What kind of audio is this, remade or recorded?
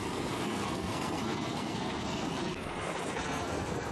remade